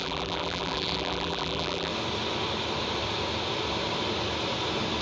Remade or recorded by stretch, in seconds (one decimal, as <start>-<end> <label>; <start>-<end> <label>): 0.0-1.9 remade; 1.9-5.0 recorded